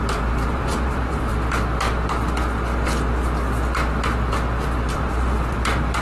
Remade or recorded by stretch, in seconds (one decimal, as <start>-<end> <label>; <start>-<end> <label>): 0.0-1.3 remade; 1.3-4.9 recorded; 4.9-6.0 remade